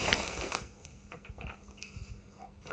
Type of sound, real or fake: fake